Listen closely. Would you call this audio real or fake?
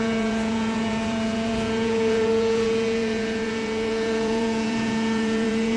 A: fake